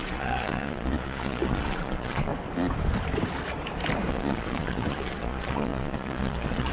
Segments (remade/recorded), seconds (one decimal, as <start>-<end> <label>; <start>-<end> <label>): 0.0-2.3 remade; 2.3-4.1 recorded; 4.1-6.7 remade